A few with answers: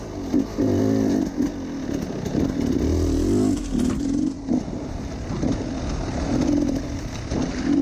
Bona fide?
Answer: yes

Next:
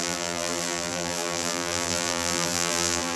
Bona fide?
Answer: no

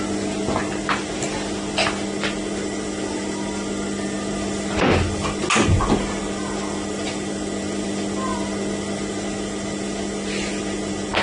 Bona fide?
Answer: yes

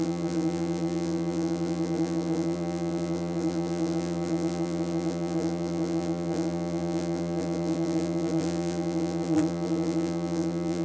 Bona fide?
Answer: no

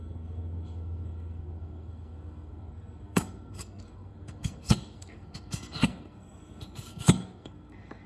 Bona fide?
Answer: no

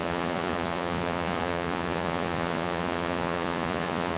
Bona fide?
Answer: no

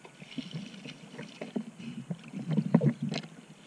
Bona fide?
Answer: yes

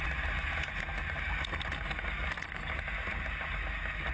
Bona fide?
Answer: yes